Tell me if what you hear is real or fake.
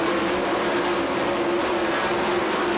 real